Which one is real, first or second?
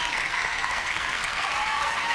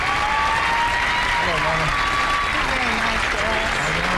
second